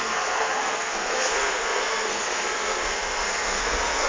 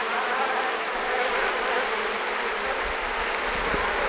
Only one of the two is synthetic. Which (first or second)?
first